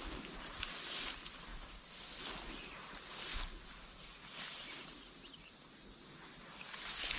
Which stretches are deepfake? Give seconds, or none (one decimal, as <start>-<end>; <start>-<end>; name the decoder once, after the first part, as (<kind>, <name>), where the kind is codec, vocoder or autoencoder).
0.0-3.3 (vocoder, BigVGAN v2); 4.4-7.2